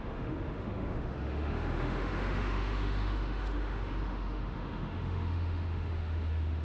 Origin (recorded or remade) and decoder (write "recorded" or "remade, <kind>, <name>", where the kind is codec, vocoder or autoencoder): remade, autoencoder, DAC-VAE